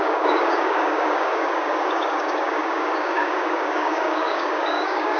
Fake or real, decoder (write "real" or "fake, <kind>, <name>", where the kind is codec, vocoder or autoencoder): fake, codec, DAC